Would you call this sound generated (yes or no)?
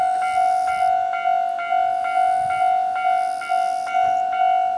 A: no